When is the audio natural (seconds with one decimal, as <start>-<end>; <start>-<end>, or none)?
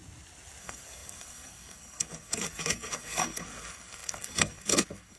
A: 0.0-0.6